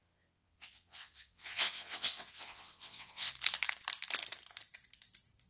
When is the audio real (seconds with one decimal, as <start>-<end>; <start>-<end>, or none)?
3.3-5.5